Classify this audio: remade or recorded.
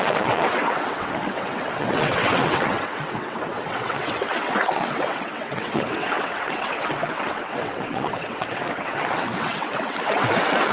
remade